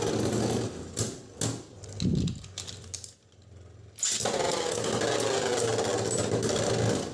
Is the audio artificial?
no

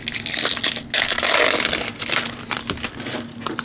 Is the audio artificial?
no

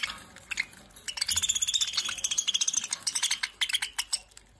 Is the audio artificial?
no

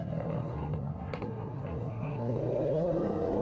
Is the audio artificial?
yes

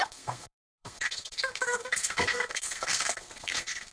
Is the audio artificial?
yes